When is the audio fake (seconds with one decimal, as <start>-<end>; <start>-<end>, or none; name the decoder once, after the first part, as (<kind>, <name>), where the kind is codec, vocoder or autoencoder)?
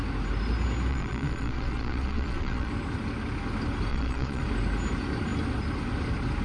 0.9-2.7 (vocoder, Vocos); 3.9-4.4